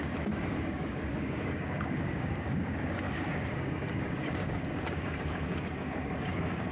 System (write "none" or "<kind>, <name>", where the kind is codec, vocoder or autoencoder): codec, DAC